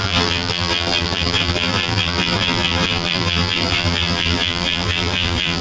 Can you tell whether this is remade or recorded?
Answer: remade